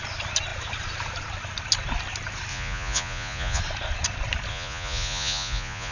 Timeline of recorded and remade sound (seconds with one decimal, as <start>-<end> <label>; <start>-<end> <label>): 0.0-2.5 recorded; 2.5-3.6 remade; 3.6-4.5 recorded; 4.5-5.9 remade